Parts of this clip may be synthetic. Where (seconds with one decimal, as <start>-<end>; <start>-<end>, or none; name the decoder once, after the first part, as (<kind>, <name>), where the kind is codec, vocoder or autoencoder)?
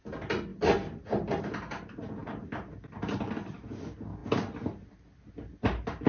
none